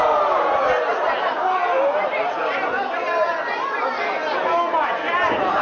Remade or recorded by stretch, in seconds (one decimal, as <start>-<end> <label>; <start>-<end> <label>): 0.0-5.6 recorded